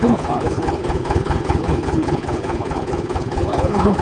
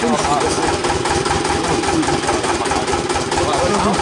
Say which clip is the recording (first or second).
second